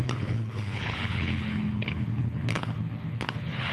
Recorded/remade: remade